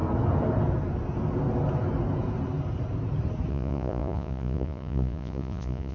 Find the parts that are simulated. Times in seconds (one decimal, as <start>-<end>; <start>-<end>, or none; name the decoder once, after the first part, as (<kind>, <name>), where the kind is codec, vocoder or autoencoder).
3.5-5.9 (vocoder, Vocos)